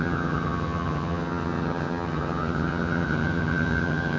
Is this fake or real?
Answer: fake